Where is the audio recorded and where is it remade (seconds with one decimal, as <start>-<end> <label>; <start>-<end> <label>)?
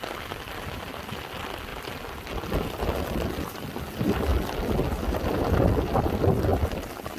0.0-7.2 recorded